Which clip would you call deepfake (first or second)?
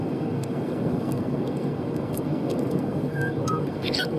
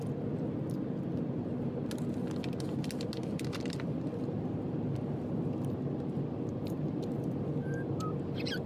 first